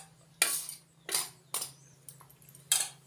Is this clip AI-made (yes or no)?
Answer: no